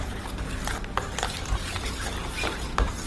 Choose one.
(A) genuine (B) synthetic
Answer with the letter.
A